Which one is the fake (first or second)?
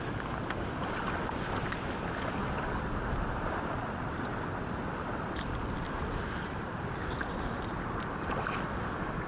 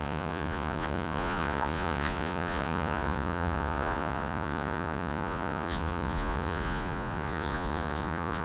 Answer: second